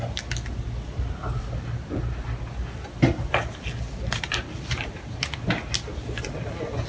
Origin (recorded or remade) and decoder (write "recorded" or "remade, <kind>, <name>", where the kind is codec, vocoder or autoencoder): recorded